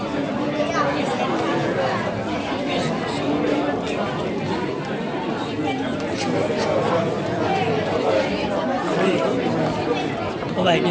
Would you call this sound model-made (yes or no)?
no